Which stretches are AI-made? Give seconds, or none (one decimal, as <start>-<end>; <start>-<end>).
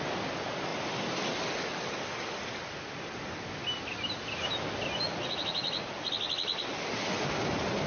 none